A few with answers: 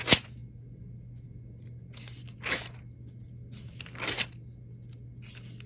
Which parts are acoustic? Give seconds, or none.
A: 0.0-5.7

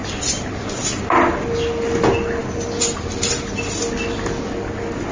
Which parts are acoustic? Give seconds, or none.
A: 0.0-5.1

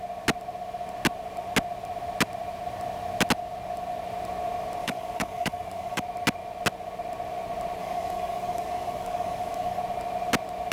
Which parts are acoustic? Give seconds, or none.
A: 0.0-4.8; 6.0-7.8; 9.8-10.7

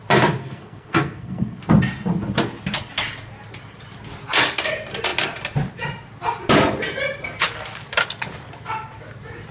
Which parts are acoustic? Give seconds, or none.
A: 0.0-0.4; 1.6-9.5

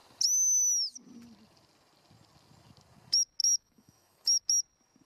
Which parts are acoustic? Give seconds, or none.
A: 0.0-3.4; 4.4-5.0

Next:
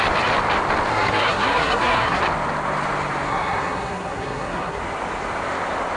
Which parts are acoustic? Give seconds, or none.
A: 0.0-0.9; 2.2-3.3; 4.8-6.0